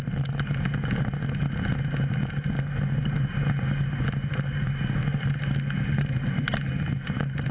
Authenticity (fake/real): real